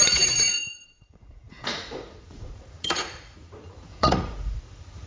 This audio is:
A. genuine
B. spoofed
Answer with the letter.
B